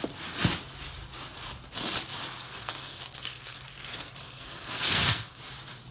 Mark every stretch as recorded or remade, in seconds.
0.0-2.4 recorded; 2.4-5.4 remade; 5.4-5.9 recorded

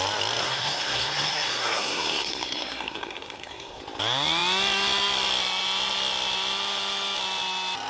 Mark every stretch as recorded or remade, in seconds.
0.0-0.4 recorded; 0.4-3.8 remade; 3.8-7.9 recorded

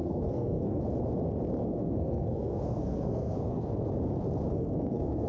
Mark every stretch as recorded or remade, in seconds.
0.0-0.8 remade; 0.8-1.6 recorded; 1.6-3.7 remade; 3.7-4.5 recorded; 4.5-5.3 remade

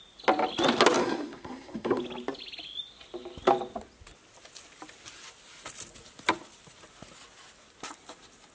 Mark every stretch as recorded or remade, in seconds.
0.0-1.0 recorded; 1.0-2.0 remade; 2.0-8.5 recorded

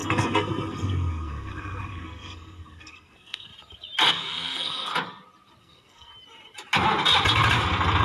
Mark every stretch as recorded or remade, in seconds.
0.0-3.5 remade; 3.5-4.1 recorded; 4.1-4.9 remade; 4.9-5.6 recorded; 5.6-6.1 remade; 6.1-8.0 recorded